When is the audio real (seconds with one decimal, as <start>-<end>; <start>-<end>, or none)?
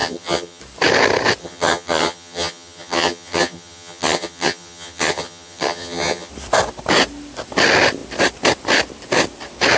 0.6-1.4; 6.3-9.8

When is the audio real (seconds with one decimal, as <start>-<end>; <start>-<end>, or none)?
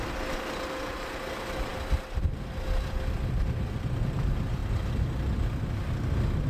0.0-6.5